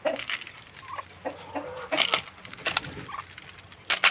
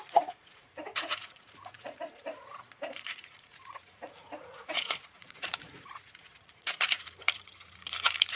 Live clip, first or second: first